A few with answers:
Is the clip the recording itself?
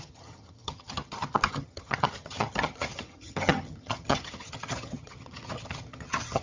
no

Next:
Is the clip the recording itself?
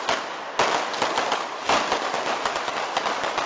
yes